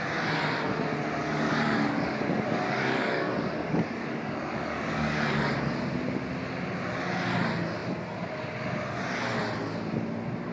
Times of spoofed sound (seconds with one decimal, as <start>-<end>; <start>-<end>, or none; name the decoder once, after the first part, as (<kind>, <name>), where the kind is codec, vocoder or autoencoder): 1.2-5.5 (codec, DAC)